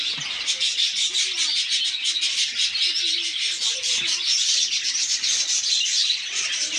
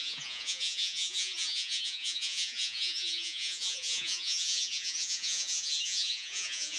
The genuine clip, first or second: first